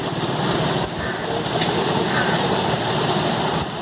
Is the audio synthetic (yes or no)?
no